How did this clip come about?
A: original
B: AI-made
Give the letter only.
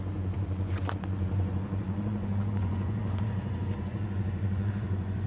B